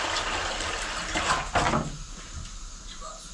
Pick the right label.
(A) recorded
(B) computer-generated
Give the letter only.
A